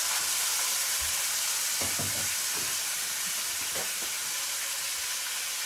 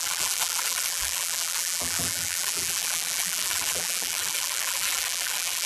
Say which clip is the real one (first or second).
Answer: first